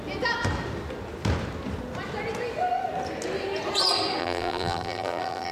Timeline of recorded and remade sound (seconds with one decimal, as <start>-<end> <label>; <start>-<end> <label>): 0.0-4.2 recorded; 4.2-5.5 remade